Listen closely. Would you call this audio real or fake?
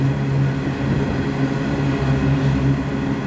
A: real